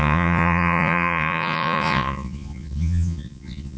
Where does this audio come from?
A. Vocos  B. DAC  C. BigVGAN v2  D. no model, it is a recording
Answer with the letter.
A